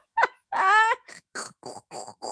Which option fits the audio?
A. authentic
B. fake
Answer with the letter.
B